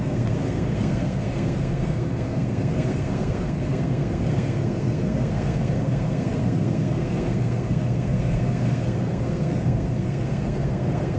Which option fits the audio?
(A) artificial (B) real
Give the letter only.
A